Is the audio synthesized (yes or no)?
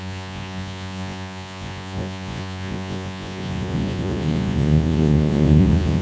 yes